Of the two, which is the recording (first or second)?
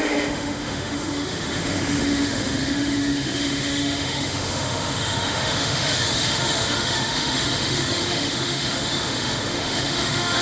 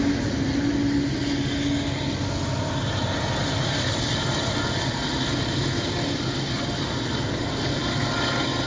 second